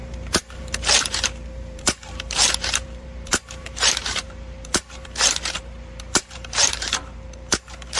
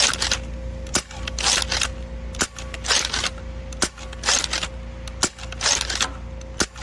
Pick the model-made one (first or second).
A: first